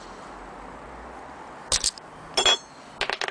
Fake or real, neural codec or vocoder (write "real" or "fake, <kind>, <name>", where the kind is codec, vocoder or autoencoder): real